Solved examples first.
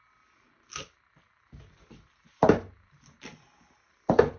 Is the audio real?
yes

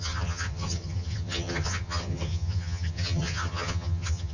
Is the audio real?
no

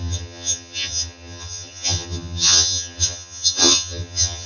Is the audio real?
no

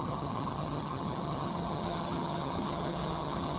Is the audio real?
no